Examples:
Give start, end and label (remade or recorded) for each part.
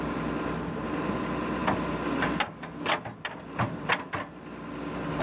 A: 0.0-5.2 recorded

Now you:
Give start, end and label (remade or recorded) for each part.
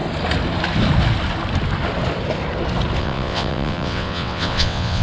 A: 0.0-3.0 recorded; 3.0-5.0 remade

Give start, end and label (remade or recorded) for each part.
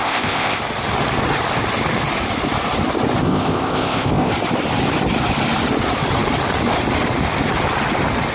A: 0.0-0.6 remade; 0.6-3.2 recorded; 3.2-4.3 remade; 4.3-8.3 recorded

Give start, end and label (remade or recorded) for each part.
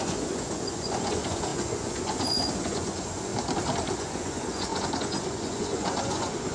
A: 0.0-3.3 remade; 3.3-4.0 recorded; 4.0-6.5 remade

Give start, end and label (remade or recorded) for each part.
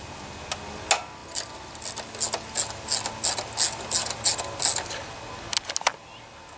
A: 0.0-6.6 recorded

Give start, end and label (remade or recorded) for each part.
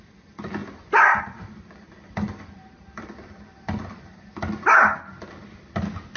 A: 0.0-0.6 recorded; 0.6-4.3 remade; 4.3-6.2 recorded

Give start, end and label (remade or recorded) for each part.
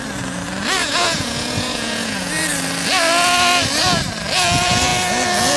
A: 0.0-0.8 recorded; 0.8-2.3 remade; 2.3-5.6 recorded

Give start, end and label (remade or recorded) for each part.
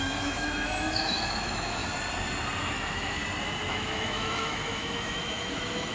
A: 0.0-1.8 remade; 1.8-2.7 recorded; 2.7-3.2 remade; 3.2-3.7 recorded; 3.7-5.9 remade